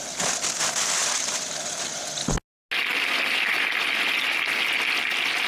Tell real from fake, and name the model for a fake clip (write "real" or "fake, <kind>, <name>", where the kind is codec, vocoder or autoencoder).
real